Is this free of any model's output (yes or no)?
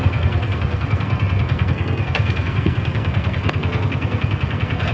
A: no